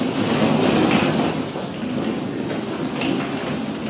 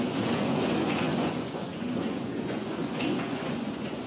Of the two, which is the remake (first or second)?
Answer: second